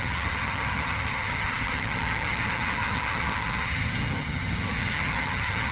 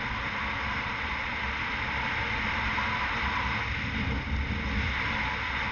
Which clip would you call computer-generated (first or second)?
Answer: first